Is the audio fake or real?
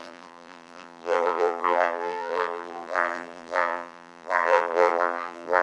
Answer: fake